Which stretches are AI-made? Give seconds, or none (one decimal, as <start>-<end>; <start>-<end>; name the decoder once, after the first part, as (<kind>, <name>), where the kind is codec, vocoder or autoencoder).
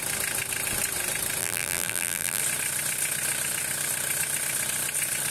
1.4-2.4 (vocoder, BigVGAN v2)